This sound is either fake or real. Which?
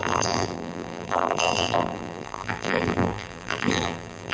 fake